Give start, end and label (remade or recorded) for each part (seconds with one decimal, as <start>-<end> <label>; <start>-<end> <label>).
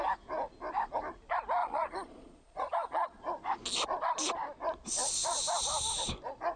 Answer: 0.0-1.6 recorded; 1.6-3.2 remade; 3.2-6.6 recorded